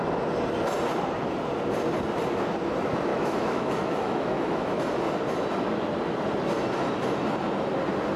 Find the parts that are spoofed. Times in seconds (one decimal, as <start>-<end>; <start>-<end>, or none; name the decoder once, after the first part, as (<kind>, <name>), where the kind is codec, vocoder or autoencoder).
3.1-4.8 (autoencoder, DAC-VAE)